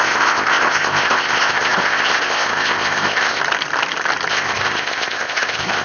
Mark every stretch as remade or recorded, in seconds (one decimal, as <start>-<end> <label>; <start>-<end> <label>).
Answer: 0.0-3.4 remade; 3.4-4.3 recorded; 4.3-5.8 remade